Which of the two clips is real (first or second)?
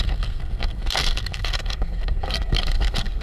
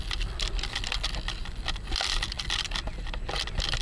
second